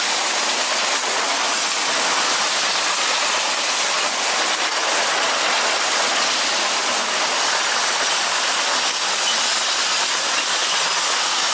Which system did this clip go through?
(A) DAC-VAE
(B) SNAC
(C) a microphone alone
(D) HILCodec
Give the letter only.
C